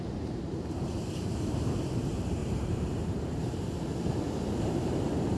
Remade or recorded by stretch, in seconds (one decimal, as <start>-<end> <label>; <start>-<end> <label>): 0.0-3.9 remade; 3.9-4.6 recorded; 4.6-5.4 remade